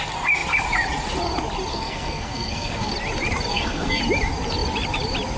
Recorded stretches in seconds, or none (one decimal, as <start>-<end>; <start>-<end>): 0.0-1.7; 2.9-3.5; 4.0-5.4

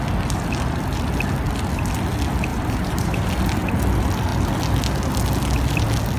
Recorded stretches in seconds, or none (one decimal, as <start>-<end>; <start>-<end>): 0.0-2.5; 3.3-6.2